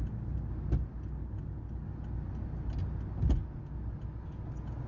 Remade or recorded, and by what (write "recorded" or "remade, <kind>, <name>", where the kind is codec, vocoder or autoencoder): recorded